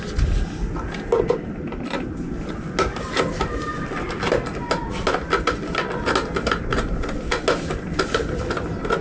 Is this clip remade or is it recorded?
recorded